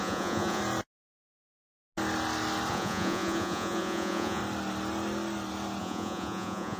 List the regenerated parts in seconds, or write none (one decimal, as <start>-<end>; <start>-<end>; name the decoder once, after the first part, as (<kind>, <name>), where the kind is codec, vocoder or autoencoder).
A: 0.0-0.6 (vocoder, Vocos); 2.7-4.4; 5.8-6.8